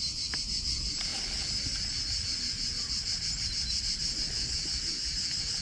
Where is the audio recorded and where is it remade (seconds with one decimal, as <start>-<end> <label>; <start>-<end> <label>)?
0.0-5.6 recorded

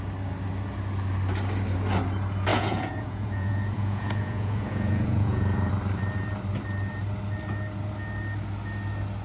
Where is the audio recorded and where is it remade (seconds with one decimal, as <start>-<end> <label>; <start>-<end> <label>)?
0.0-2.5 recorded; 2.5-5.7 remade; 5.7-9.2 recorded

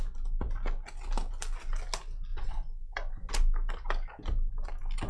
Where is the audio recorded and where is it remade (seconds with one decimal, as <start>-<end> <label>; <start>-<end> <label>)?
0.0-2.3 recorded; 2.3-3.3 remade; 3.3-5.1 recorded